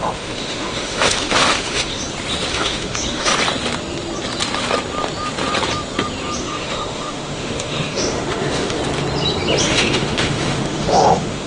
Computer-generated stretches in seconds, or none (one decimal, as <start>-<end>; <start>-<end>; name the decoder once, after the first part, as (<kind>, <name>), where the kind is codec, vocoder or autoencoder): 0.0-2.0 (autoencoder, DAC-VAE); 2.5-3.3; 6.4-8.8; 9.6-11.5